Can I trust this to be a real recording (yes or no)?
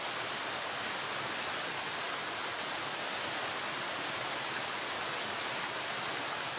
yes